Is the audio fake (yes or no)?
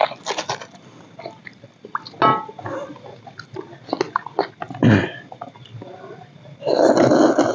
no